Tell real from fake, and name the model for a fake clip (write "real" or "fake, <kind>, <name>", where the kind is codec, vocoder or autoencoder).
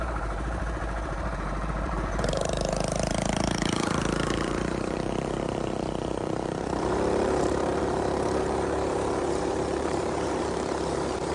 fake, vocoder, BigVGAN v2